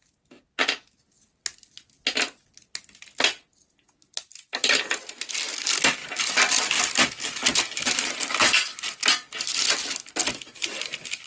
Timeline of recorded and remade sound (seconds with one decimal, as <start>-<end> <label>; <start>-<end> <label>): 0.0-11.3 recorded